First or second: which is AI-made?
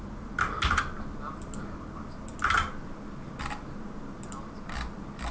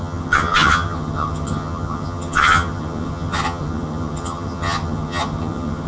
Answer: second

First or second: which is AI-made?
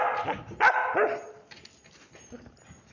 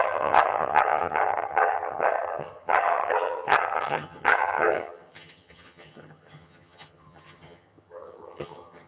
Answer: second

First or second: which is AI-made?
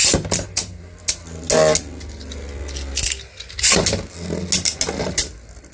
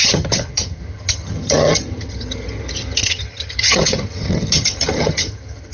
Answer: second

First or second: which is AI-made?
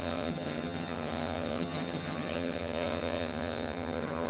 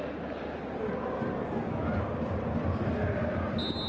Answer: first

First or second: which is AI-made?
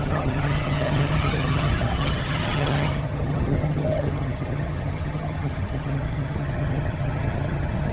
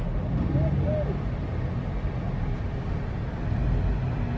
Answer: first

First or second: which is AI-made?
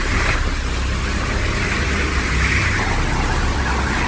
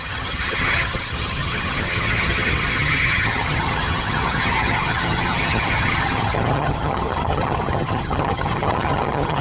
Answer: second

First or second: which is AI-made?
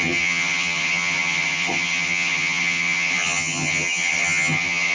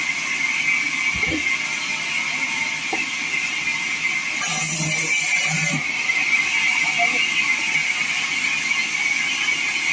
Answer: first